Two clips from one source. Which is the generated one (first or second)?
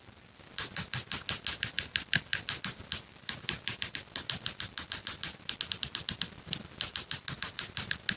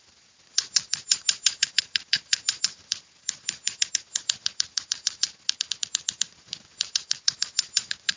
second